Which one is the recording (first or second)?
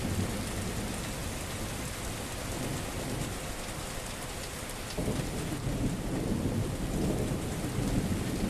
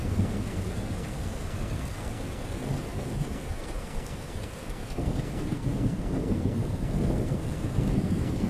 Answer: first